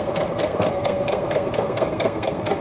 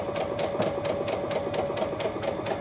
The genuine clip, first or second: second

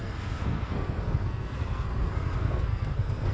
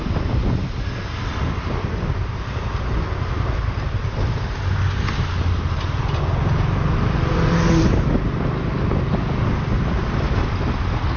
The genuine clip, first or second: second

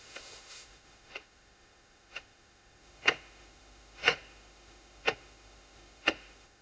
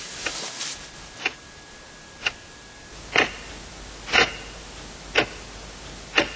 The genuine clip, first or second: second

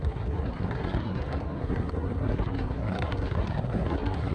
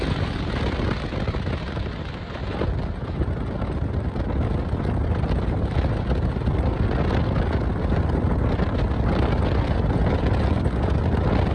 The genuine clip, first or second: second